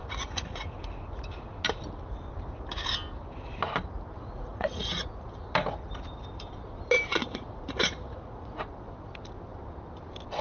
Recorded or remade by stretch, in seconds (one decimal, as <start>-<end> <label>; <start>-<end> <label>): 0.0-0.7 remade; 0.7-4.1 recorded; 4.1-5.1 remade; 5.1-7.2 recorded; 7.2-8.6 remade; 8.6-10.4 recorded